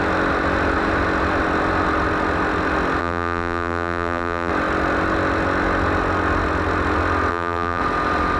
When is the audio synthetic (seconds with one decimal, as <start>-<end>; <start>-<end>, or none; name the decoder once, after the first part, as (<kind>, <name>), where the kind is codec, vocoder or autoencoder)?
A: 3.0-4.5 (vocoder, BigVGAN v2); 7.3-7.8